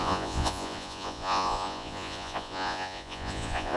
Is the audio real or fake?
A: fake